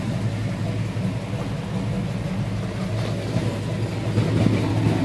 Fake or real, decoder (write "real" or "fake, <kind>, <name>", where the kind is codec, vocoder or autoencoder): real